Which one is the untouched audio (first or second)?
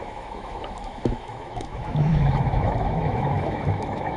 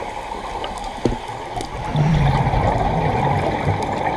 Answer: second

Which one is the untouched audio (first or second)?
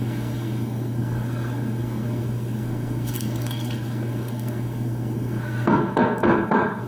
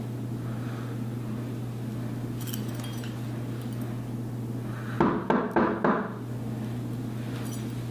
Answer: second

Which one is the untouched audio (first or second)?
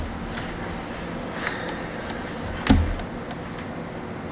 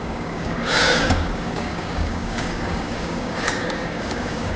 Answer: first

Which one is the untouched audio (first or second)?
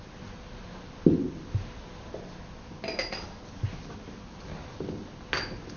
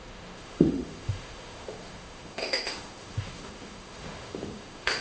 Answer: first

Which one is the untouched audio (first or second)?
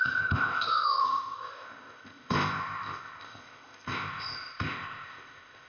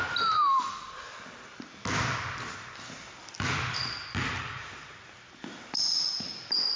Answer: second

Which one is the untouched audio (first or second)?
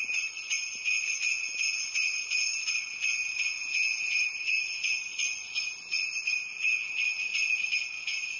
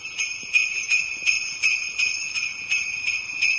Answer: first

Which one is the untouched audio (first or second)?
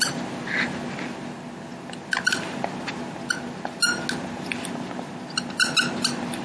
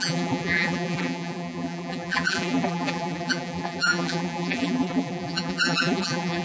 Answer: first